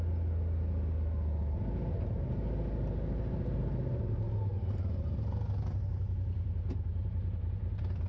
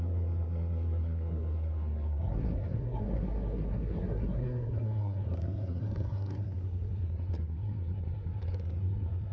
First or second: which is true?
first